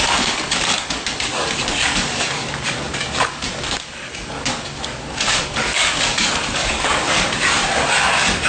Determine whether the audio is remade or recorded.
remade